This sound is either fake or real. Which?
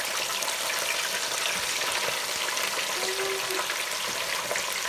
real